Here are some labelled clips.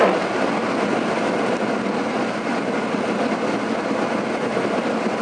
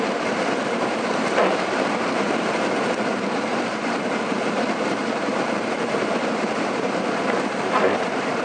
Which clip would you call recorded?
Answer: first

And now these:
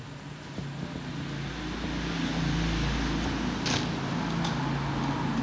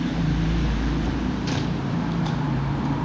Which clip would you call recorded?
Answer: first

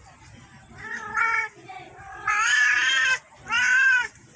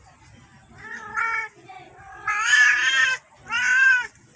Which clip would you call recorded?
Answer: second